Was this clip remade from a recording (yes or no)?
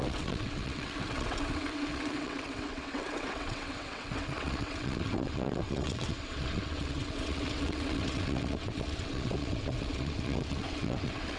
yes